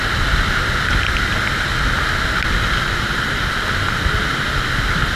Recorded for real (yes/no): yes